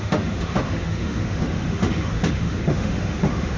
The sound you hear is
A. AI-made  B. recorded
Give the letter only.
A